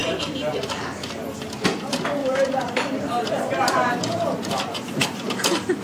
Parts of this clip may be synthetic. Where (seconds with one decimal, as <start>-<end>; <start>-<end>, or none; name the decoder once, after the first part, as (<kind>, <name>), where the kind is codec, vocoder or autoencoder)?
0.0-0.5 (vocoder, BigVGAN v2); 2.2-5.8